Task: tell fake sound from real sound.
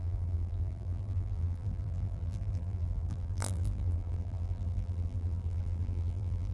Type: fake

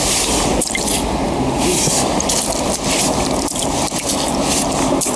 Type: real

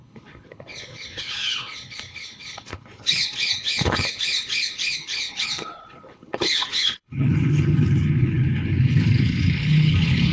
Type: fake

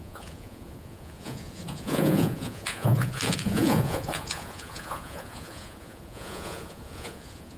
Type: fake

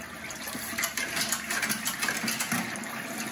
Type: real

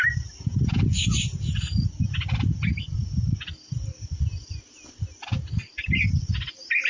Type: real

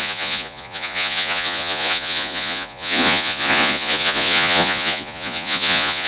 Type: fake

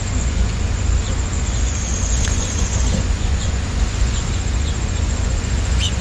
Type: fake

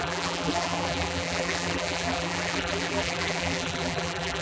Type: fake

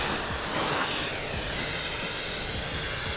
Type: real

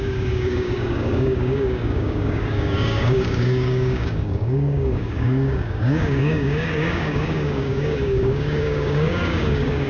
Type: fake